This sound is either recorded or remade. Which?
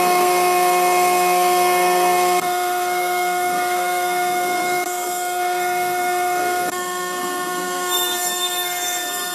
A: remade